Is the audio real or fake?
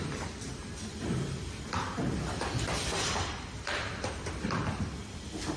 fake